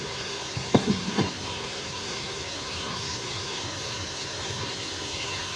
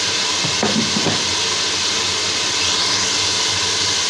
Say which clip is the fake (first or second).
first